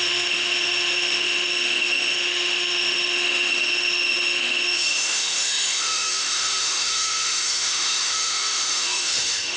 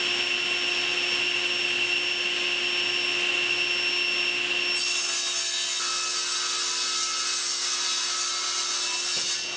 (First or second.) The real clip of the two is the second